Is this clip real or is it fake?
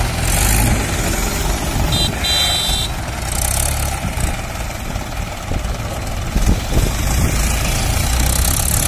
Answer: real